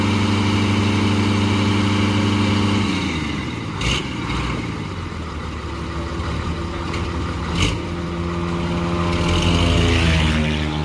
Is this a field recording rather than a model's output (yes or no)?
yes